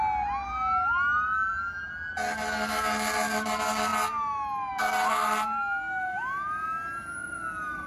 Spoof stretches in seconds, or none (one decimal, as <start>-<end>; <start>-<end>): none